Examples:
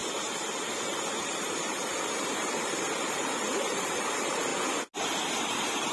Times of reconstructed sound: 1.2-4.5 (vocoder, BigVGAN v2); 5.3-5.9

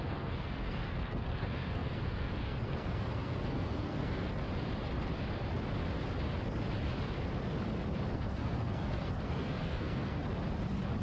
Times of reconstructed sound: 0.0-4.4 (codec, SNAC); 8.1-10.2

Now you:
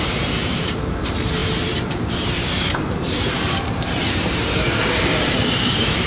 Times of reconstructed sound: 0.0-6.1 (vocoder, BigVGAN v2)

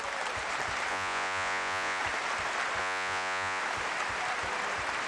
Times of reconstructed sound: 0.9-2.0 (vocoder, Vocos); 2.8-3.6

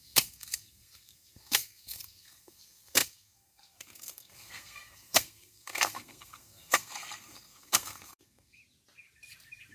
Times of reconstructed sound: 0.0-8.6 (codec, SNAC)